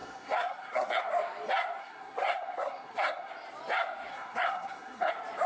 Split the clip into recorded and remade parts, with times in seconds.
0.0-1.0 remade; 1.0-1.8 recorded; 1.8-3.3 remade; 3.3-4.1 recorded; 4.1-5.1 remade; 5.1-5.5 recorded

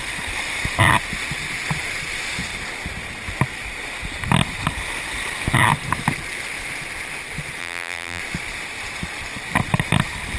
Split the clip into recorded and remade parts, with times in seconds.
0.0-7.6 recorded; 7.6-8.2 remade; 8.2-10.4 recorded

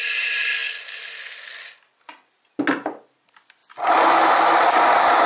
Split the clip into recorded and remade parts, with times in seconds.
0.0-5.3 recorded

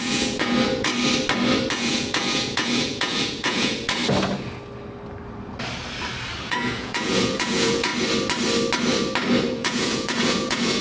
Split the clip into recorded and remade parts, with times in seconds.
0.0-0.9 remade; 0.9-1.7 recorded; 1.7-4.0 remade; 4.0-6.4 recorded; 6.4-7.9 remade; 7.9-9.5 recorded; 9.5-10.8 remade

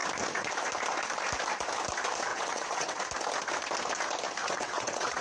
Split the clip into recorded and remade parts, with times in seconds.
0.0-2.3 recorded; 2.3-3.0 remade; 3.0-4.4 recorded; 4.4-5.2 remade

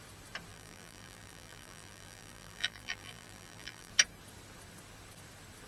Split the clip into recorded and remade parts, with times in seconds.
0.0-0.5 recorded; 0.5-3.9 remade; 3.9-5.7 recorded